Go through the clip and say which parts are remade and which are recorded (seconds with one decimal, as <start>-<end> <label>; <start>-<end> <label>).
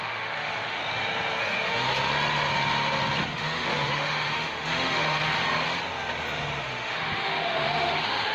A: 0.0-0.8 remade; 0.8-1.4 recorded; 1.4-1.9 remade; 1.9-3.3 recorded; 3.3-5.4 remade; 5.4-6.6 recorded; 6.6-8.3 remade